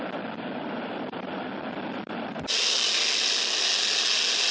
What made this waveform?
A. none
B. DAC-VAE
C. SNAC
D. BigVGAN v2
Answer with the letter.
A